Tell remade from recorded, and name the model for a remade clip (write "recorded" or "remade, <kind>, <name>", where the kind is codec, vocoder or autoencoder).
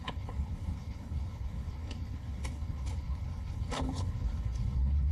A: remade, codec, HILCodec